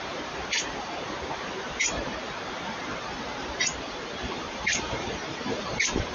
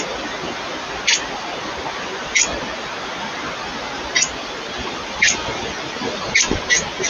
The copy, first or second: first